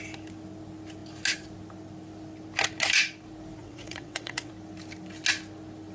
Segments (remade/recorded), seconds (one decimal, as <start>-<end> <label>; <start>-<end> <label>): 0.0-3.6 recorded; 3.6-4.5 remade; 4.5-5.9 recorded